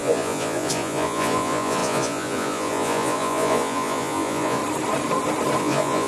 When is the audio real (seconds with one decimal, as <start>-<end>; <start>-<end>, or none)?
4.6-5.6